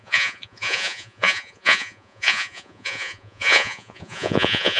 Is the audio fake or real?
fake